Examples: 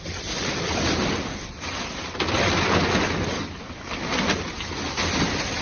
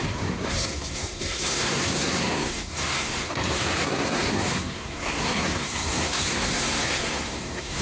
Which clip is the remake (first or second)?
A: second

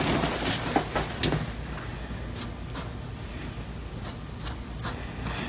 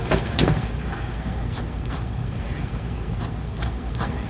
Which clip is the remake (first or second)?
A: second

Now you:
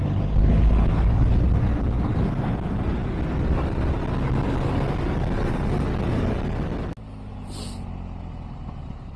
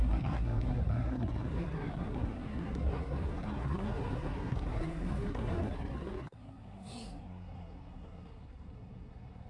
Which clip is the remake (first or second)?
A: second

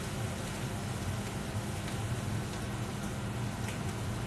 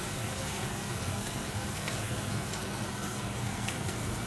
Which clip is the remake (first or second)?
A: second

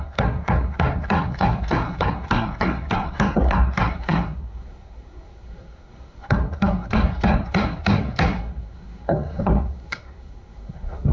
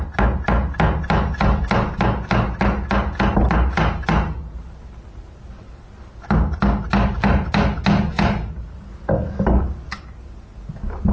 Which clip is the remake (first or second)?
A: first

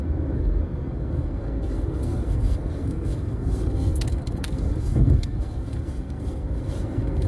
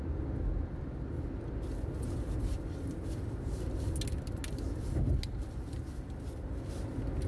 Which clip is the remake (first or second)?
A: first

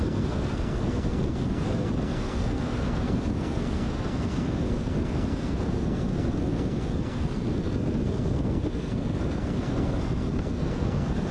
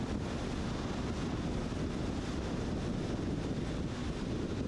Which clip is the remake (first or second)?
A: first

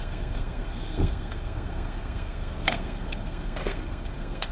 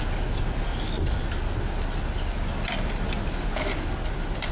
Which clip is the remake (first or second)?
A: first